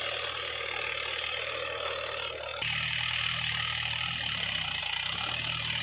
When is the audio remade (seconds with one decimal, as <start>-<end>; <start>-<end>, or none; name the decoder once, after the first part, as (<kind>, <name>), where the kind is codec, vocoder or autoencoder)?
none

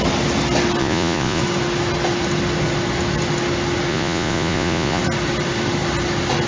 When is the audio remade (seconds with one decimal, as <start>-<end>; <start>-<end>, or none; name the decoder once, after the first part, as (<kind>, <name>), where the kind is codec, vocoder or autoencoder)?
0.8-1.4 (vocoder, Vocos); 3.9-5.0

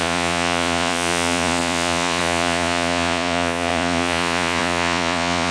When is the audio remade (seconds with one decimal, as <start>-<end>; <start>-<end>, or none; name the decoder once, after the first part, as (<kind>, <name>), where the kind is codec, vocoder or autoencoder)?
0.0-5.5 (vocoder, Vocos)

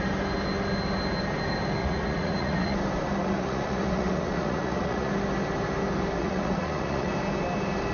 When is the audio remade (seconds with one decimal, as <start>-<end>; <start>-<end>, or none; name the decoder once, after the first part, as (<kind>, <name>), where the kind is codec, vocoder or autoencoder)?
1.8-2.8 (vocoder, Vocos); 3.2-5.1; 6.2-7.1